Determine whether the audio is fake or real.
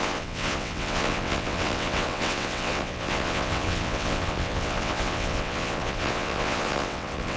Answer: fake